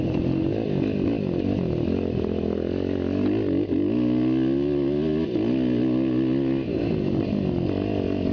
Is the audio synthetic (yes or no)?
no